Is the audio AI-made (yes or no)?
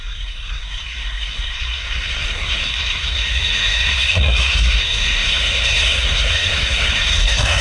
yes